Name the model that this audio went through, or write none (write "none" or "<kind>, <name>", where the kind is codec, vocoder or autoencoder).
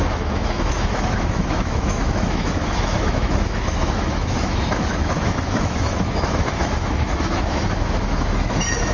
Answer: autoencoder, DAC-VAE